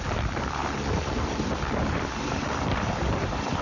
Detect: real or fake fake